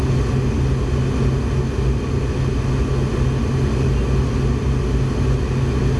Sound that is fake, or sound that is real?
real